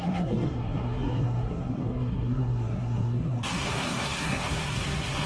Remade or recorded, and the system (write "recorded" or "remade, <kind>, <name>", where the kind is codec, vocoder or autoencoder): remade, codec, SNAC